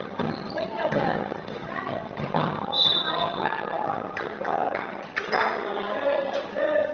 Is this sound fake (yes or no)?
yes